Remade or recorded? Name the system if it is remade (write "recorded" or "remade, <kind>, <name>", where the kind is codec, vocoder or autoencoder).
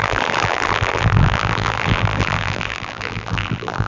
remade, vocoder, BigVGAN v2